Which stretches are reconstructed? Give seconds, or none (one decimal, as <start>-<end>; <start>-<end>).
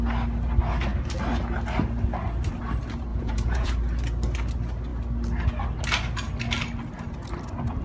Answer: 3.1-3.7